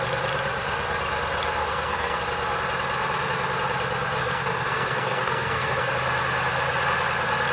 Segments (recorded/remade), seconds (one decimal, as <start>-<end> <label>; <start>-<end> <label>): 0.0-1.6 recorded; 1.6-2.2 remade; 2.2-4.2 recorded; 4.2-5.9 remade; 5.9-7.5 recorded